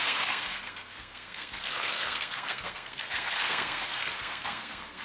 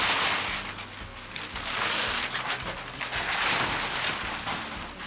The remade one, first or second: first